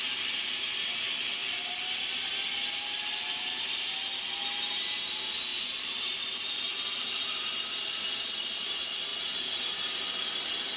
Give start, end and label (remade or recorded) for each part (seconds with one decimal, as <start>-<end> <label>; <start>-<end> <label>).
0.0-5.5 recorded; 5.5-7.4 remade; 7.4-10.8 recorded